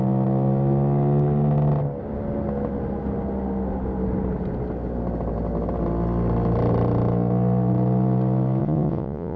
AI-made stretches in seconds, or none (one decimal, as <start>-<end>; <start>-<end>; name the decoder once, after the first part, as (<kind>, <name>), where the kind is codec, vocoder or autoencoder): 8.6-9.4 (vocoder, Vocos)